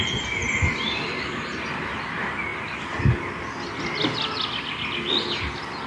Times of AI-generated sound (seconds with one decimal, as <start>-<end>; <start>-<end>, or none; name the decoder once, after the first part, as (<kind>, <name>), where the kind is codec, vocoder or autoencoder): 0.0-0.4 (vocoder, BigVGAN v2); 1.1-2.5